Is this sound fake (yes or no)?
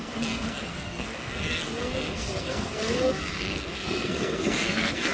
yes